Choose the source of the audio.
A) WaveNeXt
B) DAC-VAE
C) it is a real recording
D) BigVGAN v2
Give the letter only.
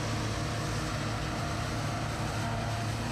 C